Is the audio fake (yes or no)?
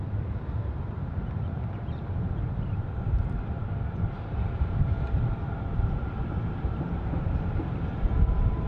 yes